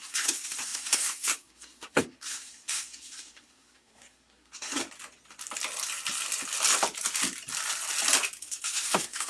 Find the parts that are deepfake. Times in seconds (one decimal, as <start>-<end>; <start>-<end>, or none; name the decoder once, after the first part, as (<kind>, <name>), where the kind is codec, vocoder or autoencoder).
0.0-4.8 (codec, SNAC); 8.4-9.3